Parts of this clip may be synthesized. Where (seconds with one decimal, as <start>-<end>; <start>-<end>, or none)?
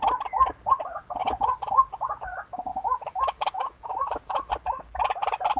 1.2-1.8; 2.7-4.5